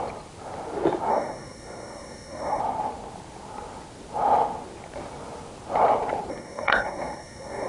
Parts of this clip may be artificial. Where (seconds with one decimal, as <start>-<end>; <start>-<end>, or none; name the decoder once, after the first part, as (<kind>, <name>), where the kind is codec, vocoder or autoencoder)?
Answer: 1.1-2.6 (codec, SNAC); 6.3-7.7